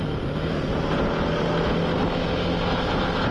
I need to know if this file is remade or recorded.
recorded